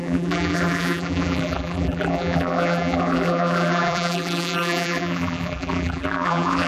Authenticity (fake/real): fake